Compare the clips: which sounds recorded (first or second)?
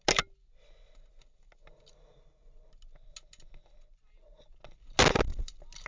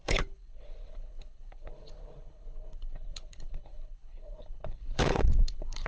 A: first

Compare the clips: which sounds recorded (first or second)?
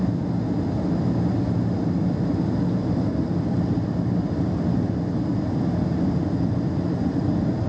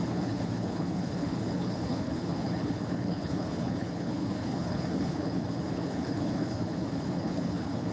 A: first